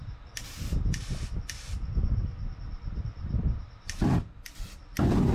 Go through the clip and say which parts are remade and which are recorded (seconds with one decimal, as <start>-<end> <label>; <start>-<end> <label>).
0.0-5.3 remade

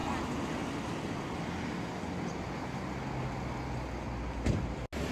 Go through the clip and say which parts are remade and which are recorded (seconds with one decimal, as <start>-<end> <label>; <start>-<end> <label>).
0.0-5.1 recorded

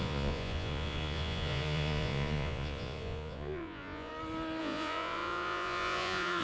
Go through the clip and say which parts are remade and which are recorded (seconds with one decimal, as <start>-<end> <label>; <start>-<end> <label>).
0.0-4.1 remade; 4.1-4.6 recorded; 4.6-6.4 remade

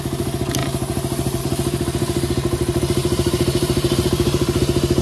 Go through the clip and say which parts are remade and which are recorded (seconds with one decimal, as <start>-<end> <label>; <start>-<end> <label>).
0.0-3.0 recorded; 3.0-4.6 remade; 4.6-5.0 recorded

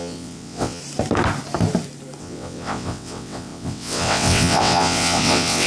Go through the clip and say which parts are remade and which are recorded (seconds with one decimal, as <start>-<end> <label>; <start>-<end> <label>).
0.0-0.8 remade; 0.8-2.2 recorded; 2.2-5.7 remade

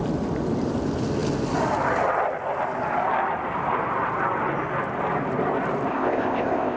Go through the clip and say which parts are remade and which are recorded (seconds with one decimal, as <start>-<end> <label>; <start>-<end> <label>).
0.0-5.9 recorded; 5.9-6.8 remade

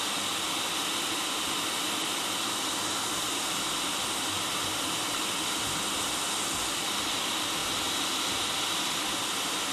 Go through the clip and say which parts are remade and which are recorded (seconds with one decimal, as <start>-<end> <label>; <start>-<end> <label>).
0.0-9.7 recorded